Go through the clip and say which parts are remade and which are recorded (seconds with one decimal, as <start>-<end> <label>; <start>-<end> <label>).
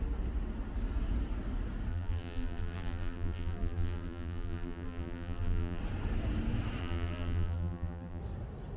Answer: 0.0-1.9 recorded; 1.9-5.8 remade; 5.8-6.8 recorded; 6.8-8.2 remade; 8.2-8.8 recorded